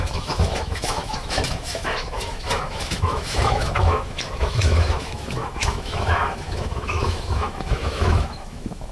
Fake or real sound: fake